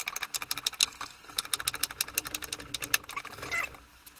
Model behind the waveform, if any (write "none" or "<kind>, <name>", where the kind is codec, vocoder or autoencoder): none